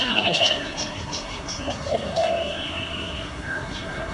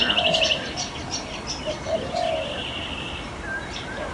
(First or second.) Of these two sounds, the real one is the second